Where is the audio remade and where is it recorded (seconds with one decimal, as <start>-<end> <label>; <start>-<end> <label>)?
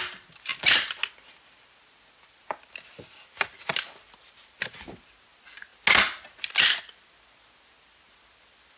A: 0.0-8.8 recorded